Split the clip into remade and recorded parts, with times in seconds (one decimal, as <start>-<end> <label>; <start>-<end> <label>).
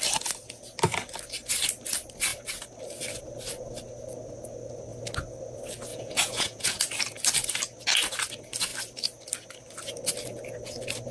0.0-5.9 recorded; 5.9-6.8 remade; 6.8-11.1 recorded